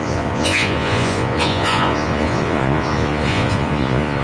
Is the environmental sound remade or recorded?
remade